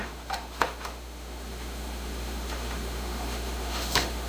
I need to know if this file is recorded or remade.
remade